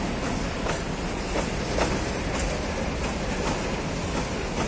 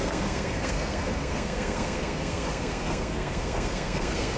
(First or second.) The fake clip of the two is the second